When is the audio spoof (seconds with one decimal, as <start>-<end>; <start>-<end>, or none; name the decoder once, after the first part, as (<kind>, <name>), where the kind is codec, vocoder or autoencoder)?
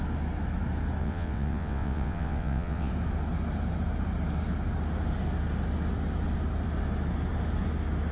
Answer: 1.0-2.9 (vocoder, WaveNeXt)